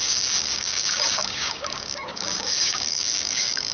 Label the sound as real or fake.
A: fake